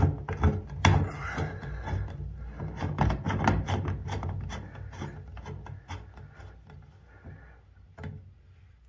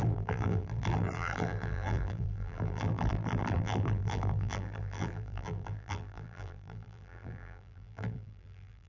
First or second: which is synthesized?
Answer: second